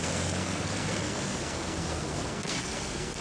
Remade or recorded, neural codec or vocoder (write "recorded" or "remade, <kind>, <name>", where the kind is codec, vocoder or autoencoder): remade, codec, SNAC